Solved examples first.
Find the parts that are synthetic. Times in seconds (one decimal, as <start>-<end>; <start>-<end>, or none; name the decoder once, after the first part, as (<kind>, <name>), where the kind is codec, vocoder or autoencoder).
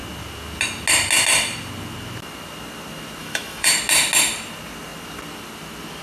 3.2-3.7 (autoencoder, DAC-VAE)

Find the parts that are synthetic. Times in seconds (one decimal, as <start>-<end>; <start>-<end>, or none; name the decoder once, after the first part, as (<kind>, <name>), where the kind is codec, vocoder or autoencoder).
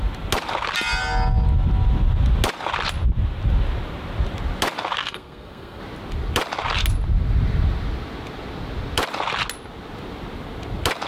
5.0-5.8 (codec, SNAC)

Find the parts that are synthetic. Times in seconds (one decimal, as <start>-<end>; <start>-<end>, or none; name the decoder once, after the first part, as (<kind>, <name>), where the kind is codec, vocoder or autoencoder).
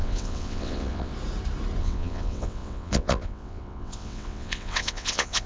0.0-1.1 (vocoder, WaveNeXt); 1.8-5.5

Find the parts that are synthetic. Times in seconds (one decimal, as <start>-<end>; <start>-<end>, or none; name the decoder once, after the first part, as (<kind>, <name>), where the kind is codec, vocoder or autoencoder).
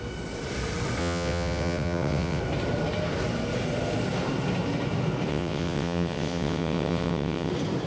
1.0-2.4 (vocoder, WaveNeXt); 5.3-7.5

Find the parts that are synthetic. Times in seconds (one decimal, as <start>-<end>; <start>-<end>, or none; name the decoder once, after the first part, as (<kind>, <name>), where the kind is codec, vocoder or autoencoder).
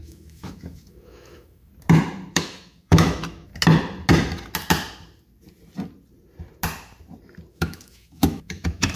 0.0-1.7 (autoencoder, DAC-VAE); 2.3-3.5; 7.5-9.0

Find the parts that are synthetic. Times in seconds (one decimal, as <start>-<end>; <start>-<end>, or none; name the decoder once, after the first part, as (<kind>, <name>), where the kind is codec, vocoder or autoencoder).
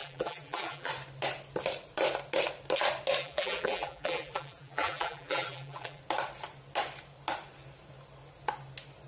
0.0-0.9 (vocoder, BigVGAN v2); 3.2-6.0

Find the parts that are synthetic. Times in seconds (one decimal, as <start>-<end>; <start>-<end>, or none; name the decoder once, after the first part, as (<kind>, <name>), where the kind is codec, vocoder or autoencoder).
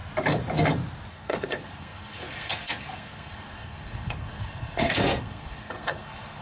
1.1-6.4 (codec, SNAC)